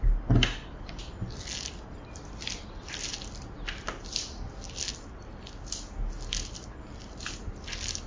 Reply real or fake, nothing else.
real